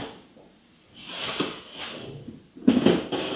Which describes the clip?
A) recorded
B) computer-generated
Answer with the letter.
A